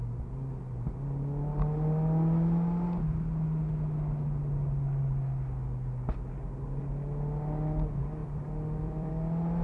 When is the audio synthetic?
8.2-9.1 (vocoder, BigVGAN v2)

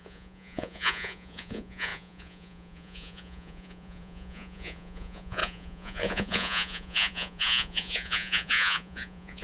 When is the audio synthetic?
0.0-9.4 (vocoder, Vocos)

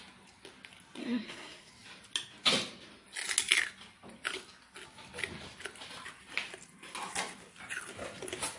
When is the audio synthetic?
1.0-1.7 (codec, SNAC)

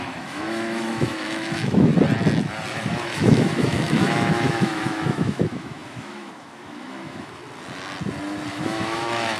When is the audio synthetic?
0.0-1.9 (autoencoder, DAC-VAE); 2.7-7.4; 8.5-9.4

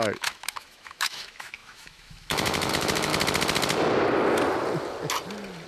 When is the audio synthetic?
0.0-3.1 (autoencoder, DAC-VAE)

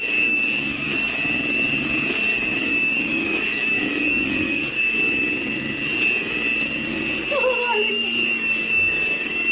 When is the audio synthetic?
0.0-1.2 (codec, DAC); 2.3-4.6; 7.9-9.5

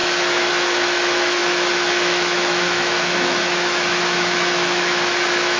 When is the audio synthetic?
0.0-5.6 (autoencoder, DAC-VAE)